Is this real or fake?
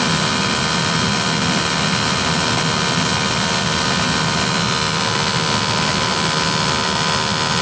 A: real